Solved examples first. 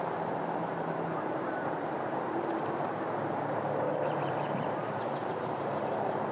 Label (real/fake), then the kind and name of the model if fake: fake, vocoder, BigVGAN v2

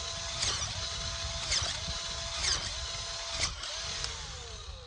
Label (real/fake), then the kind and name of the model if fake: real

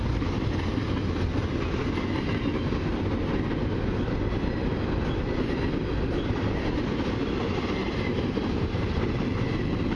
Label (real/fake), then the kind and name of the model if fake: real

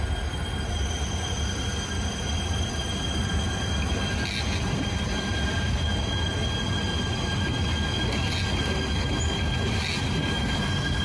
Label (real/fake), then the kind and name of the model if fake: real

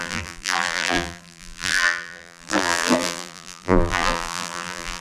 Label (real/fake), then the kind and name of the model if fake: fake, vocoder, BigVGAN v2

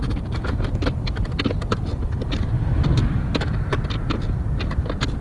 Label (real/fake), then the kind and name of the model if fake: fake, vocoder, BigVGAN v2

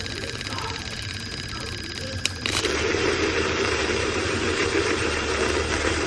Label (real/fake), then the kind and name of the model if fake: fake, vocoder, BigVGAN v2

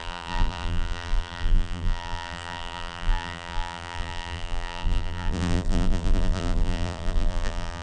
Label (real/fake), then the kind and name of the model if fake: fake, vocoder, BigVGAN v2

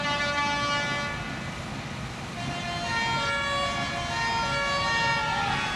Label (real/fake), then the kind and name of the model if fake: real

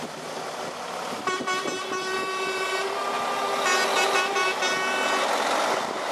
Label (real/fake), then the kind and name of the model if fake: real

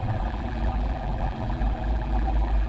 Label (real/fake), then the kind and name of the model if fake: fake, vocoder, BigVGAN v2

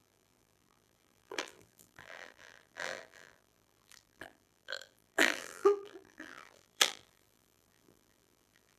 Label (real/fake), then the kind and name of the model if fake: fake, vocoder, BigVGAN v2